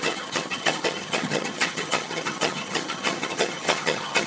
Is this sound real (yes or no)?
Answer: no